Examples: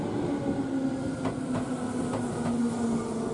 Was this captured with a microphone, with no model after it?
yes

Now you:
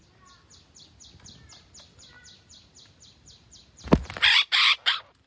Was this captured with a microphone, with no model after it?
yes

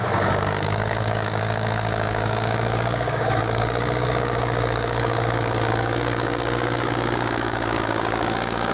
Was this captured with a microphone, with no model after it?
no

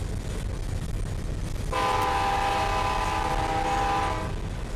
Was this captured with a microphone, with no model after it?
yes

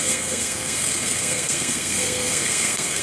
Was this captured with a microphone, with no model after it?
no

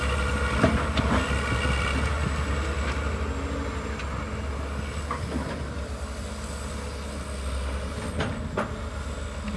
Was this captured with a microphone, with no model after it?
yes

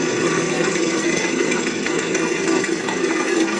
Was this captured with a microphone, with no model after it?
no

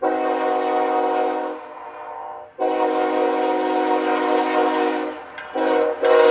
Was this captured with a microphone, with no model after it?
yes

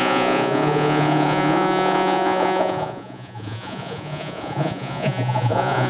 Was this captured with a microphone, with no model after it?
no